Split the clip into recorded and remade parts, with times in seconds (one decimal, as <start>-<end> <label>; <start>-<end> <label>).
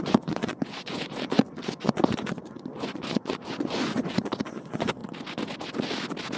0.0-5.0 remade; 5.0-6.4 recorded